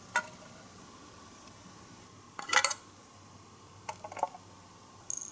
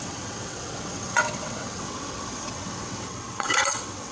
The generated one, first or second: second